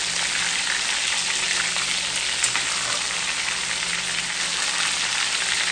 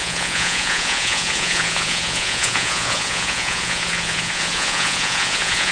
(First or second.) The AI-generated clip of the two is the second